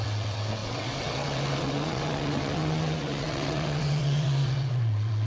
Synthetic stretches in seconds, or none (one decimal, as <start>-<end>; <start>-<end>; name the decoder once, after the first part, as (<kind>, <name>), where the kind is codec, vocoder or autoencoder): 0.0-5.3 (vocoder, WaveNeXt)